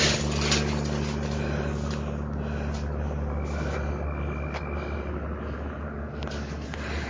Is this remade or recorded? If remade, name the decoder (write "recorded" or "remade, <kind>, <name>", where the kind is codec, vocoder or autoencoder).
recorded